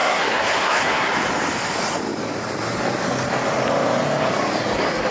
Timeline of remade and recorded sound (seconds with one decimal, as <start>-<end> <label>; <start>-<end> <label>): 0.0-1.1 remade; 1.1-5.1 recorded